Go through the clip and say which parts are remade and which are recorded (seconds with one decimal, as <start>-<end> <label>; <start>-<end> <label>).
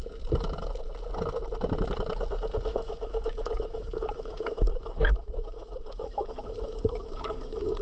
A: 0.0-2.7 recorded; 2.7-7.8 remade